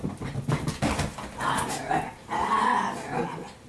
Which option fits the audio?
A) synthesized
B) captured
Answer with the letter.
B